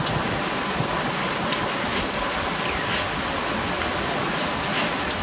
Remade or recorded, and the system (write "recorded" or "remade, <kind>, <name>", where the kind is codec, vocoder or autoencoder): recorded